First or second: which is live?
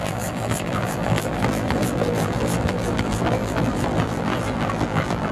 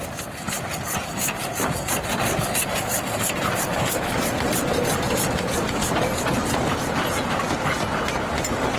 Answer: second